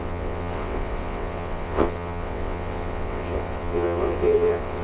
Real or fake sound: fake